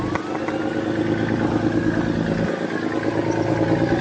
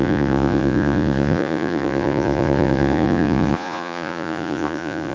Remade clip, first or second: second